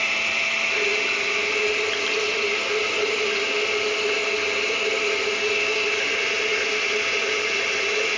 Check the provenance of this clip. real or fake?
real